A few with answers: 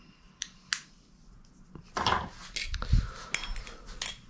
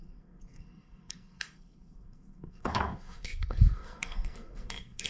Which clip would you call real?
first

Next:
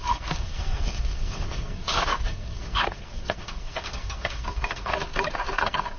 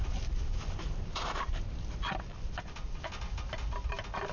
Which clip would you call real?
second